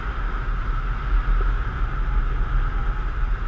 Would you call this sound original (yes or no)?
yes